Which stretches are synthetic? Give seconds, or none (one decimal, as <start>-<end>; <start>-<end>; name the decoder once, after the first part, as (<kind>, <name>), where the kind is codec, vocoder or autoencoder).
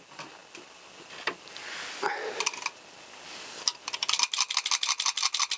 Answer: none